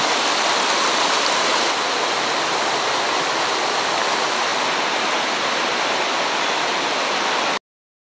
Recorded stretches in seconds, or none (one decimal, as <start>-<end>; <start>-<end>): 0.0-8.0